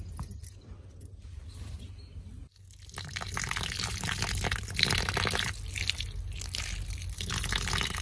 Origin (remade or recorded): recorded